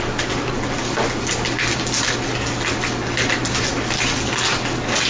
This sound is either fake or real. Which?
real